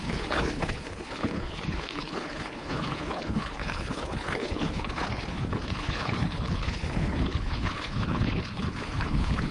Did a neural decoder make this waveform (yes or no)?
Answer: yes